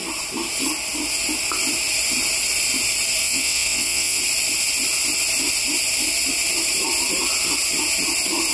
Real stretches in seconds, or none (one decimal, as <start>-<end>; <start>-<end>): 0.0-3.2; 4.2-8.5